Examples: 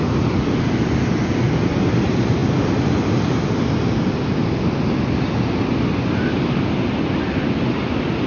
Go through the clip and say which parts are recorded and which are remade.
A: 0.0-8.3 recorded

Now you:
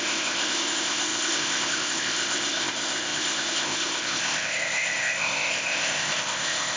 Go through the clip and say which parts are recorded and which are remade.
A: 0.0-6.8 remade

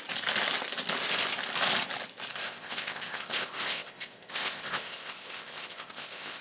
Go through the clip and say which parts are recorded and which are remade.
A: 0.0-2.4 recorded; 2.4-6.4 remade

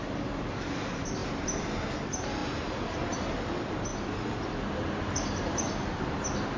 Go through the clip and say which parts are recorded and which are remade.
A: 0.0-6.6 recorded